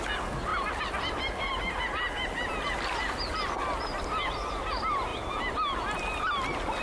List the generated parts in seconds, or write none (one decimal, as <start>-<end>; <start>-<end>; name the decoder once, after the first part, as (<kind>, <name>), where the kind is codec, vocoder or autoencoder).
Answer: none